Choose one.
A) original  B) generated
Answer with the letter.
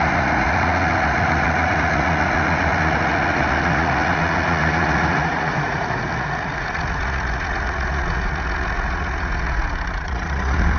B